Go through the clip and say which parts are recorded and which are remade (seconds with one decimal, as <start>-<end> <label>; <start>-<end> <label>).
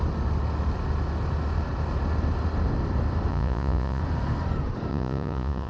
0.0-3.3 recorded; 3.3-4.0 remade; 4.0-4.9 recorded; 4.9-5.7 remade